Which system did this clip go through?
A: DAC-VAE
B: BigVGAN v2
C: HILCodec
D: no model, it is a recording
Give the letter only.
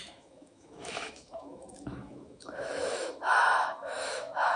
A